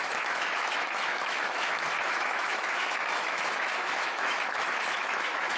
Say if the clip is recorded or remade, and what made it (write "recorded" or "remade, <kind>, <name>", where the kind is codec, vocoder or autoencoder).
remade, autoencoder, DAC-VAE